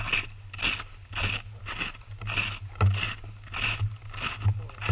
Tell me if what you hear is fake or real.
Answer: real